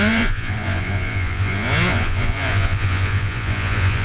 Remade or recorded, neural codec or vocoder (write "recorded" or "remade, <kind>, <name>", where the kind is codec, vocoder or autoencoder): remade, vocoder, Vocos